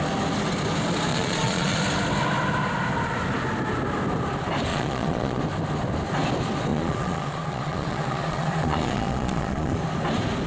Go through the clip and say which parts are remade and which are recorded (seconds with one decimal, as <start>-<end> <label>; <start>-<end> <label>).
0.0-1.1 recorded; 1.1-1.8 remade; 1.8-4.7 recorded; 4.7-5.4 remade; 5.4-6.7 recorded; 6.7-9.8 remade; 9.8-10.5 recorded